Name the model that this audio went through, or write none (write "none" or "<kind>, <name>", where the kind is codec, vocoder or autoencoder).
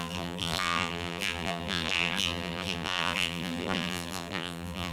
vocoder, BigVGAN v2